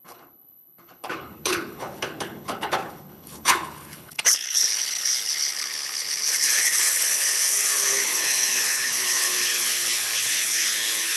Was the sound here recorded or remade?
remade